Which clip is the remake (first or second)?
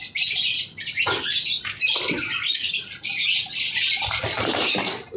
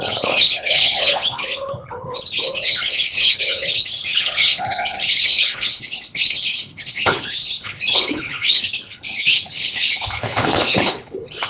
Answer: second